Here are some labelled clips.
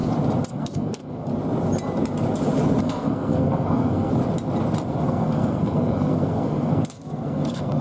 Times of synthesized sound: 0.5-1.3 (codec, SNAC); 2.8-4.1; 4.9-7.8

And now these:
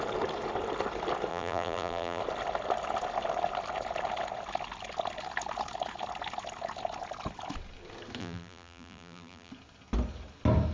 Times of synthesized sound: 1.3-2.2 (vocoder, BigVGAN v2); 8.2-9.5